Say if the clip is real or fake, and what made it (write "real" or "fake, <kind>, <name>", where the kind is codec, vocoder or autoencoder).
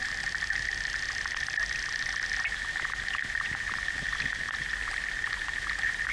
real